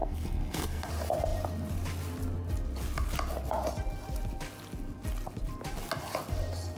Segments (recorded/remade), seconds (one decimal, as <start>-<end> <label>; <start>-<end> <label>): 0.0-0.9 remade; 0.9-6.8 recorded